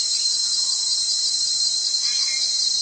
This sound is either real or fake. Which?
fake